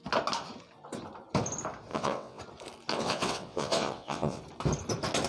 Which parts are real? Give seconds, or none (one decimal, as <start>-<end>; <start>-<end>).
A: 0.0-1.9; 2.4-2.9; 4.4-5.3